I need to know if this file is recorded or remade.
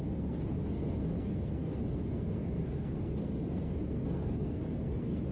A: remade